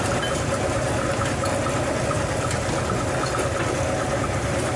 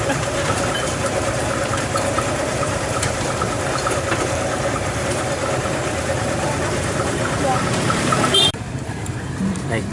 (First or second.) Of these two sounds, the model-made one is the second